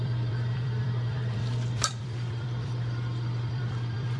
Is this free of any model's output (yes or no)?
no